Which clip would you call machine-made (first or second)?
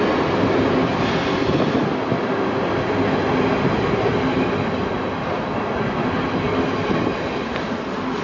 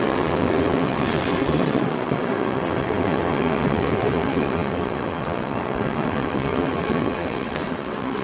second